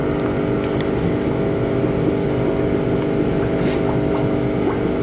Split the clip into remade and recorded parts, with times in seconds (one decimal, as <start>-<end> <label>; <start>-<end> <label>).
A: 0.0-5.0 recorded